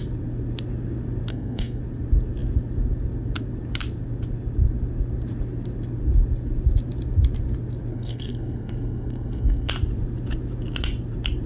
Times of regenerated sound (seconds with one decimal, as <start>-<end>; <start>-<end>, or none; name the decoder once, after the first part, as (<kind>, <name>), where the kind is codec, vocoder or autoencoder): 1.3-1.8 (codec, SNAC); 7.9-9.7